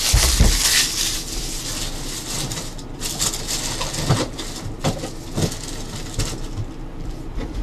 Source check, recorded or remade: recorded